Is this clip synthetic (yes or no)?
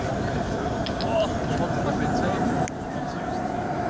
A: yes